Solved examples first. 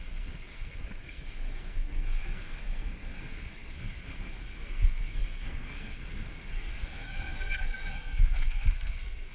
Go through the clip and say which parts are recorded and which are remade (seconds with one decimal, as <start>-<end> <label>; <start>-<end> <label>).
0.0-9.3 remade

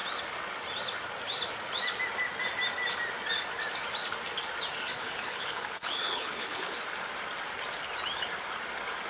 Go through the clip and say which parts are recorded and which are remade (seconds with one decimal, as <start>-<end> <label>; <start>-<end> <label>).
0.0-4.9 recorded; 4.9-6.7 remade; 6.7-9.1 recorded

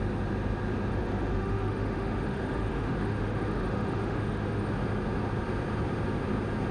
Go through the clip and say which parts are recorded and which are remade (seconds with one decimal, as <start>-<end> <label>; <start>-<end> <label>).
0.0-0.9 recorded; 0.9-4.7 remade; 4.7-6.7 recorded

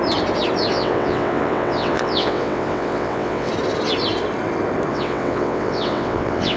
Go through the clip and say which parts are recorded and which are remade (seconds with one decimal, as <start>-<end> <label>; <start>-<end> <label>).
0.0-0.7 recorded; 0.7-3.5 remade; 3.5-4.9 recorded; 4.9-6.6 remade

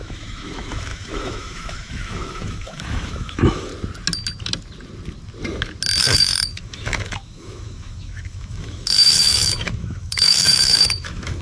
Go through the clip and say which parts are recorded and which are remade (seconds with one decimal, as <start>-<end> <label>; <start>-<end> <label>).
0.0-3.7 remade; 3.7-6.0 recorded; 6.0-11.4 remade

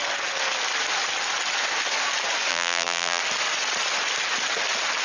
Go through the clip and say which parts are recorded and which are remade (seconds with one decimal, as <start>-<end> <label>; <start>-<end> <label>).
0.0-2.5 recorded; 2.5-3.2 remade; 3.2-5.0 recorded